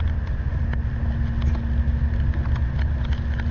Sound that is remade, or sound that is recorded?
recorded